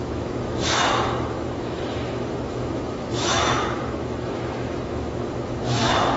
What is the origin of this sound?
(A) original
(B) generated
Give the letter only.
B